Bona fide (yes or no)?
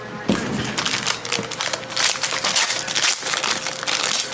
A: yes